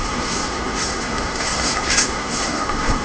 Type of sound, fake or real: fake